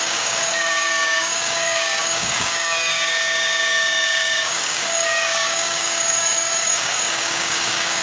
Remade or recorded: remade